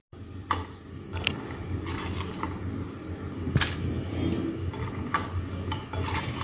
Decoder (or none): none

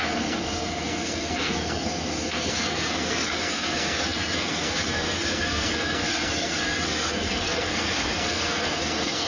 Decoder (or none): codec, SNAC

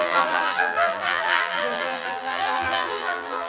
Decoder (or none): vocoder, BigVGAN v2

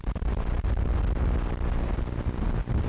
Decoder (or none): none